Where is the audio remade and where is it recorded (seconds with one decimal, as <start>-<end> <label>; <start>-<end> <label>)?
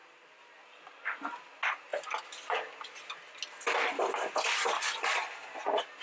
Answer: 0.0-6.0 recorded